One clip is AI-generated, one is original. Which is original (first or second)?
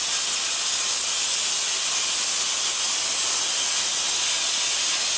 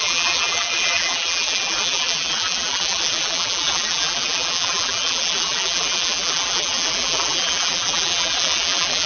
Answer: first